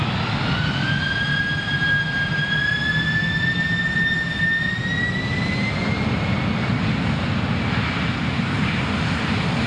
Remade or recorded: recorded